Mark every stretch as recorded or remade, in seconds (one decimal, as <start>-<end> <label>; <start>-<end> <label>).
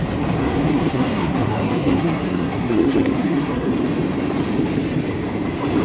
0.0-0.4 recorded; 0.4-3.7 remade; 3.7-5.8 recorded